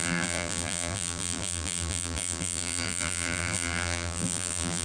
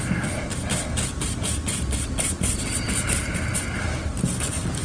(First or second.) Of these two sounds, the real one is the second